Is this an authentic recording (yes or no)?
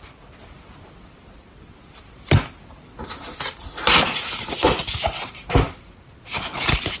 yes